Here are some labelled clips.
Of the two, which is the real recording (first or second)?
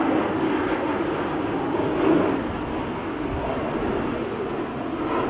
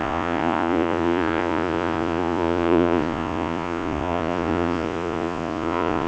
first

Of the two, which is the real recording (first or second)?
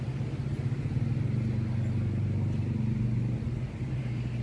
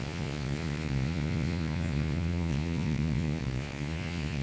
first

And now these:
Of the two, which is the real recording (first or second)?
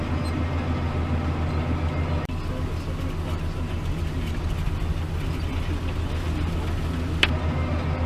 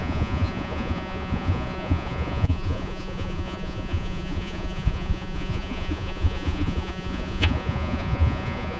first